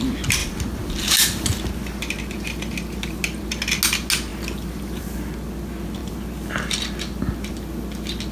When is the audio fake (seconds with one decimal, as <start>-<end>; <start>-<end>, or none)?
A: none